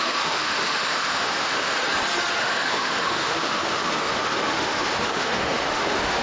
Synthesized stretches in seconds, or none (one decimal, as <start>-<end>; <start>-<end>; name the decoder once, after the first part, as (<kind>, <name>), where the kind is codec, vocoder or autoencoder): 0.0-1.7 (autoencoder, DAC-VAE); 2.4-6.2